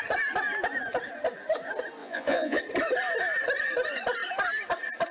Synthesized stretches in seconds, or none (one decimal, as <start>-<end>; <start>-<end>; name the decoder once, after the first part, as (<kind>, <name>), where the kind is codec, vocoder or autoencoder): 2.0-2.6 (vocoder, Vocos)

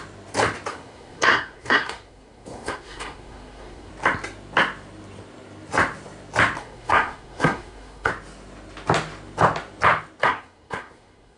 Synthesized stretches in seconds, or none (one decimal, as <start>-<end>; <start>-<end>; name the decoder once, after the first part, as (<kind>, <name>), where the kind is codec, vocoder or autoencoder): 0.7-3.9 (codec, SNAC); 6.6-8.1; 10.2-11.4

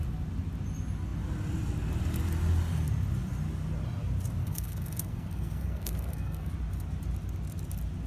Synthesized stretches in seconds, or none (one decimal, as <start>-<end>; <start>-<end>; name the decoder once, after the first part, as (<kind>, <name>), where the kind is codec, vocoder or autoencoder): 4.4-6.5 (codec, SNAC)

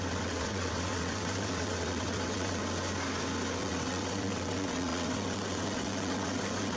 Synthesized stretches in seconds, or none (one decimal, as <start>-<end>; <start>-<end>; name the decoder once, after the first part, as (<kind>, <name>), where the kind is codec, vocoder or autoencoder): 0.0-2.6 (vocoder, WaveNeXt); 3.6-6.8

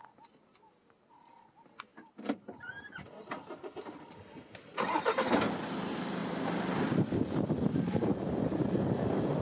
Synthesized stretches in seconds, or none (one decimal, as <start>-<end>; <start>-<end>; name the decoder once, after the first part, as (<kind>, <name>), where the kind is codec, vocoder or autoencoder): none

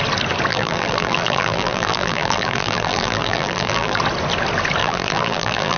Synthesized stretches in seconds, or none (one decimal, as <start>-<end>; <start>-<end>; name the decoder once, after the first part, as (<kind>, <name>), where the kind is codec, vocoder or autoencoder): 0.5-4.0 (vocoder, BigVGAN v2); 4.8-5.8

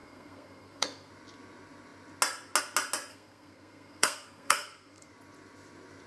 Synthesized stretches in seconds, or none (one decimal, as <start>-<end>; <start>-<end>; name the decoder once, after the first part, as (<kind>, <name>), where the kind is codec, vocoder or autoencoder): 0.0-1.1 (codec, SNAC); 3.1-5.1

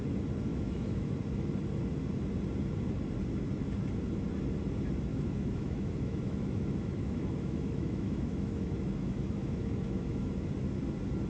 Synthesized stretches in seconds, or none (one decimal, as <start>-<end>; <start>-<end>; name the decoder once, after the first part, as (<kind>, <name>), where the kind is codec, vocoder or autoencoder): 0.5-1.1 (autoencoder, DAC-VAE); 5.1-10.3